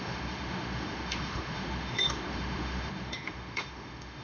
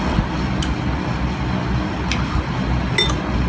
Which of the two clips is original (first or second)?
second